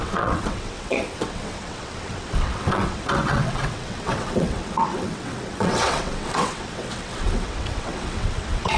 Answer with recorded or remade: remade